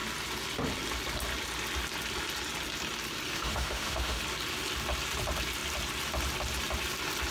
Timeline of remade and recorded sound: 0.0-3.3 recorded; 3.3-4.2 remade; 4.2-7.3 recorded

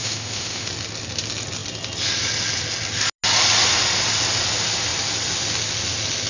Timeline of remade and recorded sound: 0.0-0.7 remade; 0.7-6.3 recorded

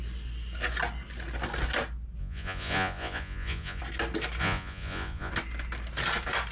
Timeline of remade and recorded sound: 0.0-2.2 recorded; 2.2-3.8 remade; 3.8-4.4 recorded; 4.4-5.3 remade; 5.3-6.5 recorded

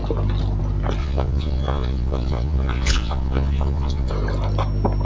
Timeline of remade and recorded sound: 0.0-1.0 recorded; 1.0-4.1 remade; 4.1-5.1 recorded

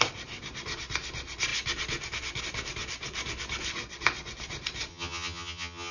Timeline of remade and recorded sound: 0.0-4.9 recorded; 4.9-5.9 remade

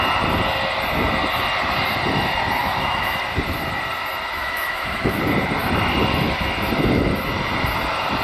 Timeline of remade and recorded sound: 0.0-2.6 recorded; 2.6-3.2 remade; 3.2-4.4 recorded; 4.4-5.2 remade; 5.2-8.2 recorded

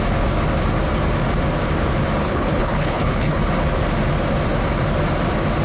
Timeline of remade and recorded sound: 0.0-2.2 recorded; 2.2-3.4 remade; 3.4-5.6 recorded